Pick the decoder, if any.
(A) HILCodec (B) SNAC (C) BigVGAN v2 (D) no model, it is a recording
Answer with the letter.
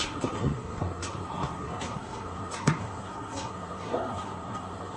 B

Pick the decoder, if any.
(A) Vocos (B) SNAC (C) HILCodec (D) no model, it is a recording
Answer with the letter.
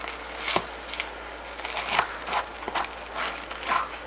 D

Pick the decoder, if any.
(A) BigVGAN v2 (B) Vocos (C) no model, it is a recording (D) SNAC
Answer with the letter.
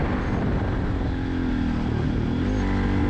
C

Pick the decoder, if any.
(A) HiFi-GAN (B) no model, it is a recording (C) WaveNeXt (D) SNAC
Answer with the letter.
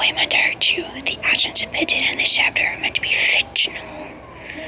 B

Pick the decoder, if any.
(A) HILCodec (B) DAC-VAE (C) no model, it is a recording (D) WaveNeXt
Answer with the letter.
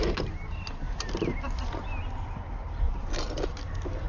C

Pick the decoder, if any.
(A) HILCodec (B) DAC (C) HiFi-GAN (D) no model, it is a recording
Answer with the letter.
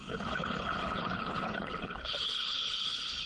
A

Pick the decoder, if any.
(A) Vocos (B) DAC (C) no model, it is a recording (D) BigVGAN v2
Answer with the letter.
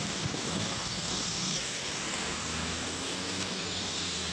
B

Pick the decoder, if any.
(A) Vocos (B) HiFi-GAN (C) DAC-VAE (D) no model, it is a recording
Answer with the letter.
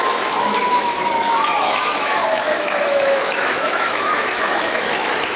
C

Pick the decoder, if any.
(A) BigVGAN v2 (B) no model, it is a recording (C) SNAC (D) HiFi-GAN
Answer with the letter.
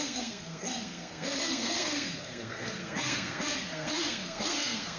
C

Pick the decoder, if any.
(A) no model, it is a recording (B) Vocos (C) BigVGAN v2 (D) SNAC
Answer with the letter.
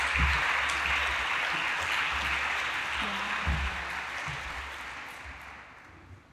A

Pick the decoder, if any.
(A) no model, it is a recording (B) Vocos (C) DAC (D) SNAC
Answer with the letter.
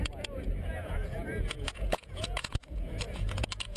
B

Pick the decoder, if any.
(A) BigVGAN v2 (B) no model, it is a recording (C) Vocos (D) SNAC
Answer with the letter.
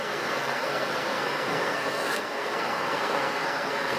D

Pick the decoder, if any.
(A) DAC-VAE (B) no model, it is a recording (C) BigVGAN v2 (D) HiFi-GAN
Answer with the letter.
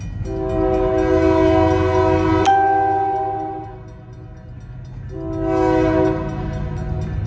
B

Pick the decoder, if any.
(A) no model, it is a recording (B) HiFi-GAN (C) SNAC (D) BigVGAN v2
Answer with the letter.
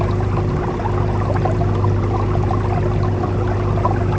A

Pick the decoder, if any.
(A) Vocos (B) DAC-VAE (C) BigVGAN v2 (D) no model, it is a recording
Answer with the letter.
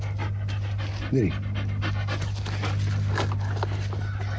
D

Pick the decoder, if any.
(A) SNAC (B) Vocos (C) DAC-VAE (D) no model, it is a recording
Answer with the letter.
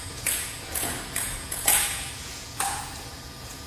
B